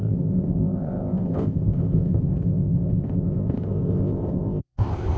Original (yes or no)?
no